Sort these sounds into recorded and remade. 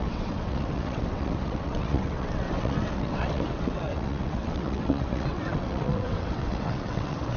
remade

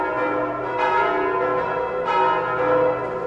recorded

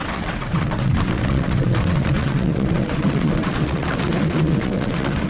remade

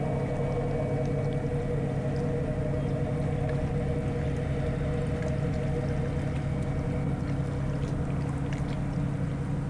recorded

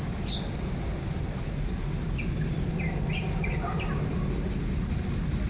recorded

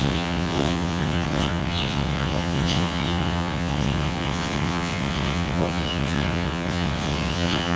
remade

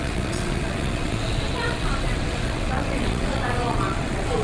remade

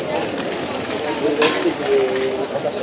recorded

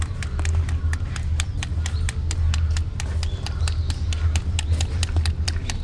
recorded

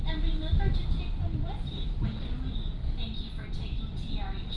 recorded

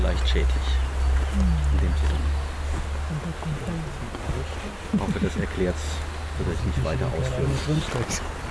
recorded